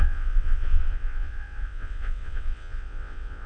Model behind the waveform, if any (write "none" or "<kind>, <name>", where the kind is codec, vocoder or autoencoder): vocoder, WaveNeXt